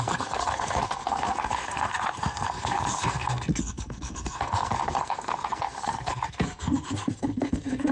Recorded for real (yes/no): no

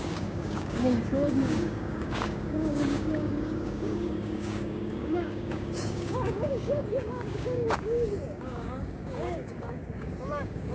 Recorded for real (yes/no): no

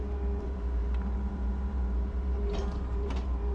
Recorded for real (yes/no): no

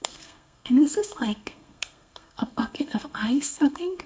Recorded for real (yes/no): no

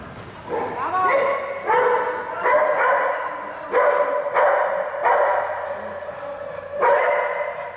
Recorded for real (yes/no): yes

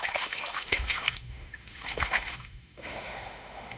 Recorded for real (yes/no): no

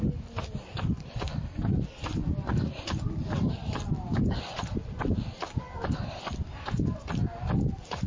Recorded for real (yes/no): yes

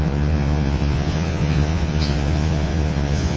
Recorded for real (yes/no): no